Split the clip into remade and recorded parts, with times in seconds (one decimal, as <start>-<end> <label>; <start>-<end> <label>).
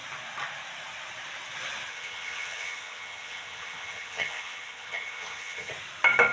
0.0-1.9 recorded; 1.9-5.7 remade; 5.7-6.3 recorded